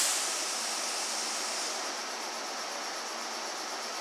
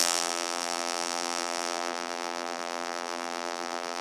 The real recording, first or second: first